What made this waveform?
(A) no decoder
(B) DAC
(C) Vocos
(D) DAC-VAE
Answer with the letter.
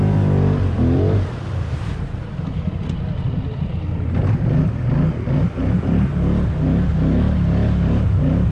A